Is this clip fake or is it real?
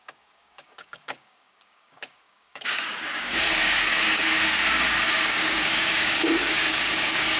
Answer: fake